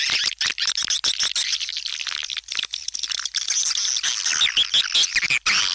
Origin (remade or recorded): recorded